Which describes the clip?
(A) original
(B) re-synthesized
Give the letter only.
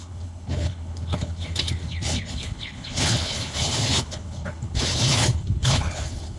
B